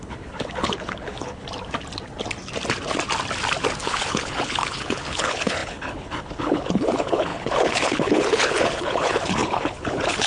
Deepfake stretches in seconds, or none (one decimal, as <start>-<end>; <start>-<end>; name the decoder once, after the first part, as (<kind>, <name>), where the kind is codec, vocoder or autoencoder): 0.0-1.4 (codec, HILCodec); 3.8-10.3